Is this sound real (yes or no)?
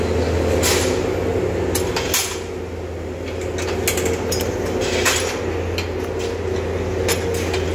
yes